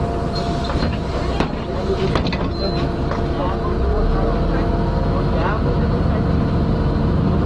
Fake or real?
real